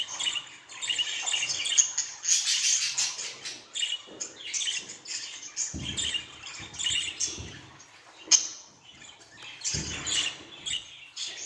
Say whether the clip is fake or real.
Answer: real